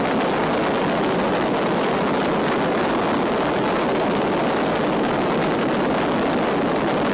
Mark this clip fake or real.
real